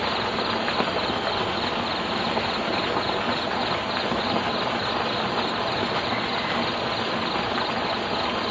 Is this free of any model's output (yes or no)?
yes